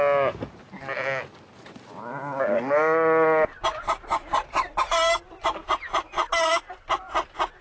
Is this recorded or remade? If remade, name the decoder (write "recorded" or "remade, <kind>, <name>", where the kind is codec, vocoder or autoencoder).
recorded